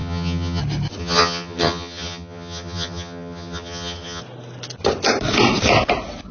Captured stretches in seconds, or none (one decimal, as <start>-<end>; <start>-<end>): 0.6-1.0; 4.2-6.3